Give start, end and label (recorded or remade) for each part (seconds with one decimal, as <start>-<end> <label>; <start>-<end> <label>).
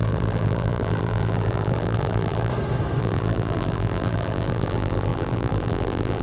0.0-2.5 remade; 2.5-3.0 recorded; 3.0-6.2 remade